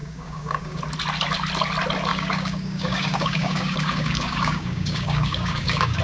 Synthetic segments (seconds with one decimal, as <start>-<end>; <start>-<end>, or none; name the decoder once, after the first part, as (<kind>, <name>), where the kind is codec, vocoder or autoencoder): 0.0-0.8 (codec, DAC); 2.1-6.0

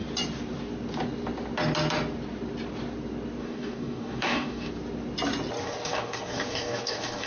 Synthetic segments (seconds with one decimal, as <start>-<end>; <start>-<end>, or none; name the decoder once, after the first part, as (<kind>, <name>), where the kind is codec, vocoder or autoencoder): 3.4-4.7 (codec, DAC); 5.6-7.3

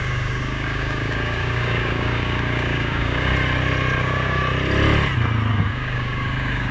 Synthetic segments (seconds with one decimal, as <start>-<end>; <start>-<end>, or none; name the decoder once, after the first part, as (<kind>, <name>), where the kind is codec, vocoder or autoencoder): 0.0-3.3 (codec, DAC); 4.0-4.4; 5.5-6.7

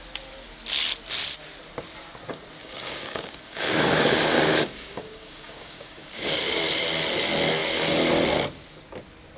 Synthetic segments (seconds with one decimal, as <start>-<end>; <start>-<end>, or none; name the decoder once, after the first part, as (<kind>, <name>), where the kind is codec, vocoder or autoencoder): 2.6-6.3 (codec, DAC)

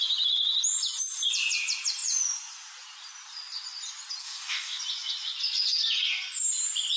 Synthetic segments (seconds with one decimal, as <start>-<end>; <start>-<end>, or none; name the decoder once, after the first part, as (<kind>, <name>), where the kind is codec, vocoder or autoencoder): 4.2-4.8 (codec, DAC)